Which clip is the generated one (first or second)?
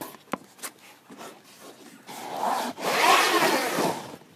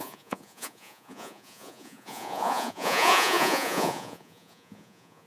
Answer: second